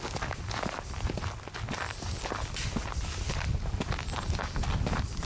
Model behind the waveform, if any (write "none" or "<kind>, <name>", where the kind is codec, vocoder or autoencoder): none